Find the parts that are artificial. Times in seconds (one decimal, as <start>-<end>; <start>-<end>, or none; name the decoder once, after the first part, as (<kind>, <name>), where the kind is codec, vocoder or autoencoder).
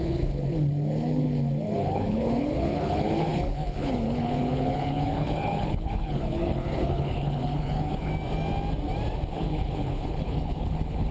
0.0-8.1 (codec, HILCodec); 9.3-11.1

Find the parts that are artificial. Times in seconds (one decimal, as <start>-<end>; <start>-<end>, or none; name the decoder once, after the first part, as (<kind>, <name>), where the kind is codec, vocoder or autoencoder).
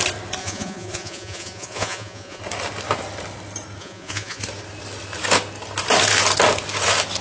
0.4-2.4 (vocoder, Vocos); 3.8-4.4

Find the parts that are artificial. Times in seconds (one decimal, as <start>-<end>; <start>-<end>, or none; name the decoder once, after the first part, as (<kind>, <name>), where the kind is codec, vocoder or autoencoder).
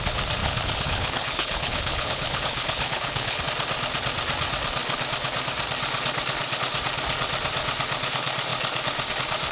0.4-3.4 (codec, HILCodec)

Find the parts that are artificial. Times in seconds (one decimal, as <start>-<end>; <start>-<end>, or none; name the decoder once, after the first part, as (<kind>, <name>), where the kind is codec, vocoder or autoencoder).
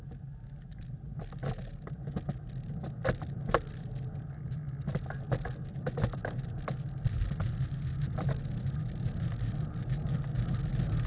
none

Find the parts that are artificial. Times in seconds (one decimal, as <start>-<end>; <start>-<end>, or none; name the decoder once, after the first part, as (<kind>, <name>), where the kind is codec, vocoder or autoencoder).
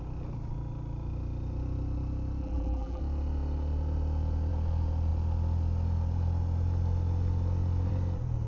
2.4-3.0 (vocoder, BigVGAN v2)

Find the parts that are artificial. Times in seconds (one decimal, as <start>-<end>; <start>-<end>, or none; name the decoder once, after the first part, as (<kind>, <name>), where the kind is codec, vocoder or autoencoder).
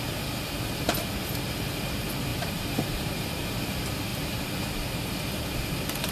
1.2-1.9 (vocoder, BigVGAN v2); 2.3-3.1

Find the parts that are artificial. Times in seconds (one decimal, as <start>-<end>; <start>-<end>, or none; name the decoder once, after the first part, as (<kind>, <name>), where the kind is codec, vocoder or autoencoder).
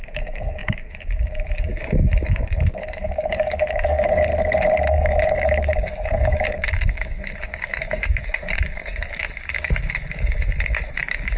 0.0-4.3 (codec, DAC); 4.9-11.4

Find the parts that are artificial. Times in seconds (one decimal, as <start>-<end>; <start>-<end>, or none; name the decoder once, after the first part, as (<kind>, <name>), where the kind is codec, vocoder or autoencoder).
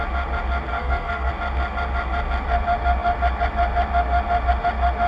0.7-1.3 (codec, SNAC)